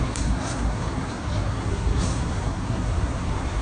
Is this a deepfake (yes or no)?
yes